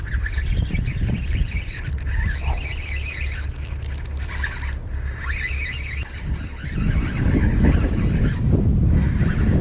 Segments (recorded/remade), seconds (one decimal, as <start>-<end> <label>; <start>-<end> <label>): 0.0-9.6 recorded